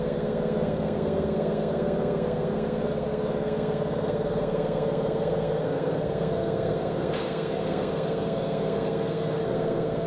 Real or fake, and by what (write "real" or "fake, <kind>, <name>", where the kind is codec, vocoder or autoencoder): fake, codec, SNAC